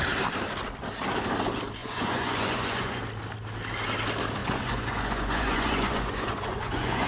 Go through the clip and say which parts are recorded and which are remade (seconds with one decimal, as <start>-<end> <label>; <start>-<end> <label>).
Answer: 0.0-1.8 recorded; 1.8-3.0 remade; 3.0-4.4 recorded; 4.4-7.1 remade